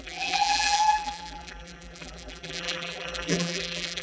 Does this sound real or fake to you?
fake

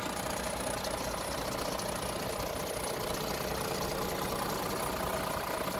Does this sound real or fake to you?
real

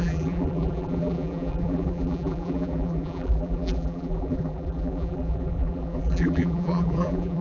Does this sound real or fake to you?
fake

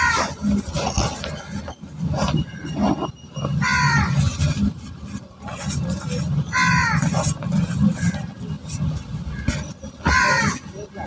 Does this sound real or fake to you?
real